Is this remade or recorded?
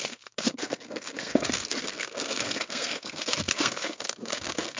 remade